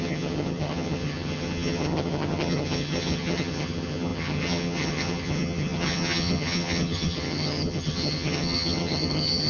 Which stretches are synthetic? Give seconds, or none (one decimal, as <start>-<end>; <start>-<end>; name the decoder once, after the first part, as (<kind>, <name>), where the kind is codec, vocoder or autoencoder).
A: 0.0-9.5 (vocoder, HiFi-GAN)